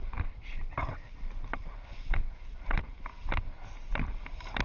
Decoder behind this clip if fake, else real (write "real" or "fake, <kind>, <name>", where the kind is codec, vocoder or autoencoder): real